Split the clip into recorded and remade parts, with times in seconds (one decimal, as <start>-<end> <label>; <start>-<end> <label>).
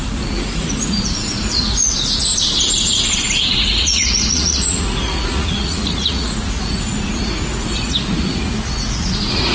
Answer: 0.0-2.3 remade; 2.3-3.5 recorded; 3.5-9.5 remade